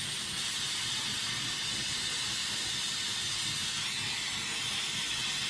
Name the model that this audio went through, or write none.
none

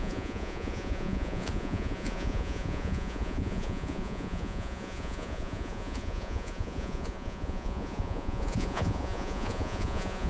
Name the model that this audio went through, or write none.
vocoder, Vocos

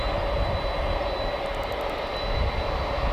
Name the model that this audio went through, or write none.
none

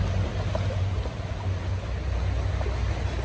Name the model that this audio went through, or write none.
none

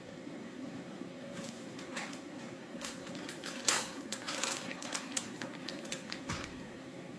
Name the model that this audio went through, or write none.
codec, SNAC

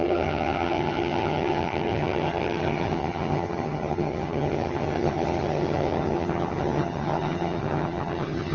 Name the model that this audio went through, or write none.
vocoder, HiFi-GAN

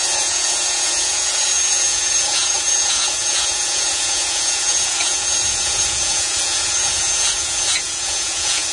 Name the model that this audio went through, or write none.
vocoder, Vocos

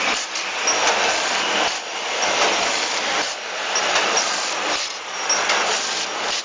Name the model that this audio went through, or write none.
none